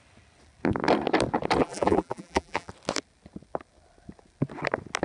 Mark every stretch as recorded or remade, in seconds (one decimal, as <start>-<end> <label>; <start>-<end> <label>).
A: 0.0-1.6 recorded; 1.6-2.7 remade; 2.7-5.0 recorded

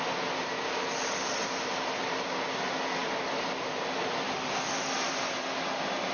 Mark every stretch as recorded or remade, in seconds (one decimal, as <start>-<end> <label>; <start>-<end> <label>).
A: 0.0-6.1 recorded